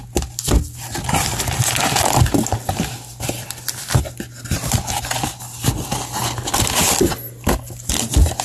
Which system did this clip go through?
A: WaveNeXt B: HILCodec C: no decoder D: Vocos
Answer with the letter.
C